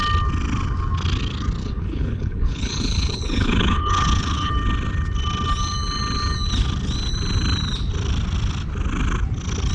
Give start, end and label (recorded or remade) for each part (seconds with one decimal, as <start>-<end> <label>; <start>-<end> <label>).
0.0-1.6 recorded; 1.6-4.5 remade; 4.5-9.7 recorded